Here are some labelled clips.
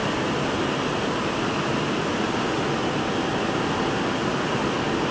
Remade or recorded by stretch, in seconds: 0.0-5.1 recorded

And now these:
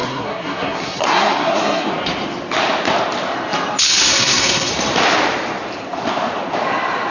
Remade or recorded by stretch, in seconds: 0.0-1.9 remade; 1.9-4.0 recorded; 4.0-4.7 remade; 4.7-7.1 recorded

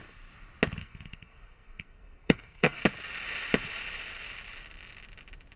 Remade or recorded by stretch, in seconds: 0.0-0.8 recorded; 0.8-2.8 remade; 2.8-5.6 recorded

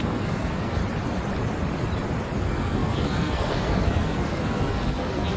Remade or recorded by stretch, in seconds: 0.0-0.8 remade; 0.8-2.4 recorded; 2.4-5.4 remade

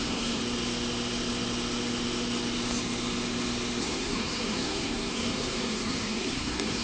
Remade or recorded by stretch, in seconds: 0.0-0.4 remade; 0.4-3.8 recorded; 3.8-6.8 remade

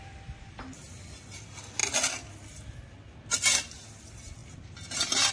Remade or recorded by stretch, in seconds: 0.0-5.3 recorded